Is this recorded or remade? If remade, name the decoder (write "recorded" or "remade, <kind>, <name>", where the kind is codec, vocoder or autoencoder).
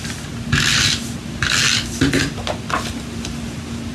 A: recorded